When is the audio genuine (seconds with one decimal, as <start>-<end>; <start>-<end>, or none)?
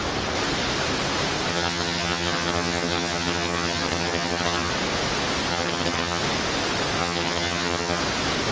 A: 0.0-1.5; 4.7-5.5; 6.2-7.0; 8.0-8.5